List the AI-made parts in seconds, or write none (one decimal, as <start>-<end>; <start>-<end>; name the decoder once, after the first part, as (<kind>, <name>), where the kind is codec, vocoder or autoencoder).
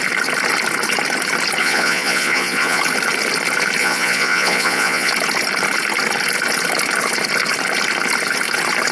1.6-2.8 (vocoder, Vocos); 3.8-5.1